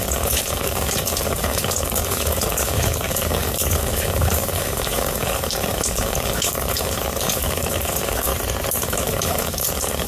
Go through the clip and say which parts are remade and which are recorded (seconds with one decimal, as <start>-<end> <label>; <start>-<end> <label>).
0.0-8.3 remade; 8.3-8.8 recorded; 8.8-10.1 remade